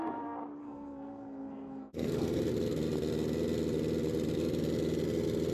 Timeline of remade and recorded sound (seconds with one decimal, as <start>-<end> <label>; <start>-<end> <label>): 0.0-0.6 recorded; 0.6-2.4 remade; 2.4-5.5 recorded